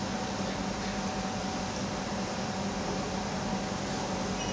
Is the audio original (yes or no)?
yes